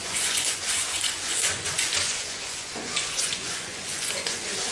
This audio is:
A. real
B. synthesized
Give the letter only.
B